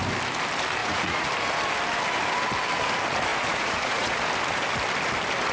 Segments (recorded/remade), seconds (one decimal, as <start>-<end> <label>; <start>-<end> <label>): 0.0-0.8 recorded; 0.8-1.3 remade; 1.3-3.3 recorded; 3.3-4.2 remade; 4.2-5.5 recorded